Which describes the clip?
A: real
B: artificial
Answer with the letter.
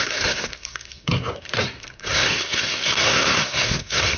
B